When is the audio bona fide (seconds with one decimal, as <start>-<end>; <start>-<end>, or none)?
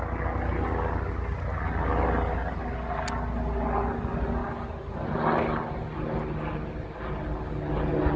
0.0-8.2